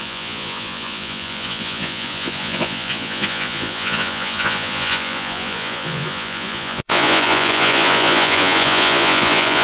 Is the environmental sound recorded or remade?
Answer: remade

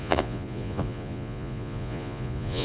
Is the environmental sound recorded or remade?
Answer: remade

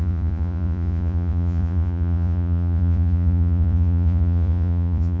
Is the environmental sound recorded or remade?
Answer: remade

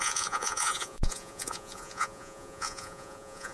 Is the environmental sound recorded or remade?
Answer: remade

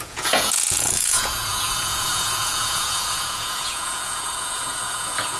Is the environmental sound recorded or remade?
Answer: remade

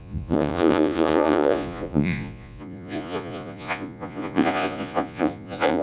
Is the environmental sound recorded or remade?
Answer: remade